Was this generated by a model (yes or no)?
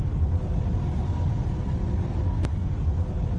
no